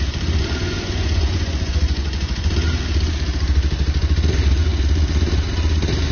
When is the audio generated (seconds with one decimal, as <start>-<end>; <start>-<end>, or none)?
0.6-2.5